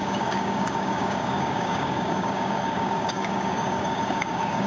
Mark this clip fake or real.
fake